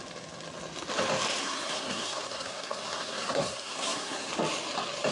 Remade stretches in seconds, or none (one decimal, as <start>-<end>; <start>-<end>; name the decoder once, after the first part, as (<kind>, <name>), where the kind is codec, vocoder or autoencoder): 1.4-4.3 (codec, SNAC)